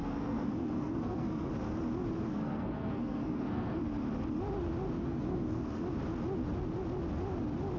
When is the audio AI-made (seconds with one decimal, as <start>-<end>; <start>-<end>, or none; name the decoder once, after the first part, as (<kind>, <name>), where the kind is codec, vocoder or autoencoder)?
0.0-1.5 (codec, SNAC); 2.3-3.8; 5.0-5.8